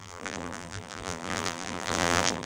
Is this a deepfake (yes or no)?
yes